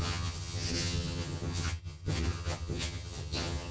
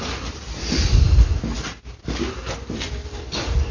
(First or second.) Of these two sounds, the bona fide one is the second